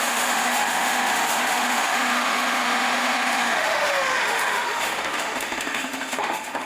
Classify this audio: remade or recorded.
remade